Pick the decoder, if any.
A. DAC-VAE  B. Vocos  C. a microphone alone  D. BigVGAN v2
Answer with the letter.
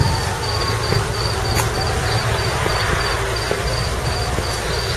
C